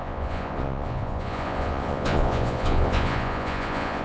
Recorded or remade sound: remade